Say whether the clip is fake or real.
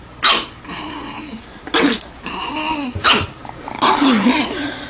real